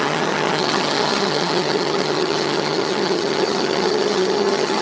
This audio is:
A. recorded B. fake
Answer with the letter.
B